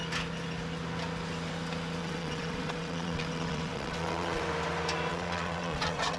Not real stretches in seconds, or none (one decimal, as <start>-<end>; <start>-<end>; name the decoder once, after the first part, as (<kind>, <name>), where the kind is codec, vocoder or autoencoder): 2.0-4.4 (vocoder, WaveNeXt); 5.1-6.2